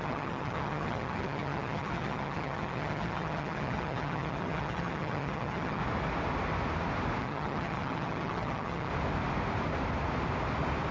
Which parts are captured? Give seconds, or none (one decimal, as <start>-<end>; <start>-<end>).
5.8-7.2; 8.9-10.9